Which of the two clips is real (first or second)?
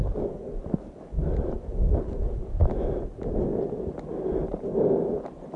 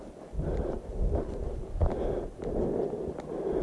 first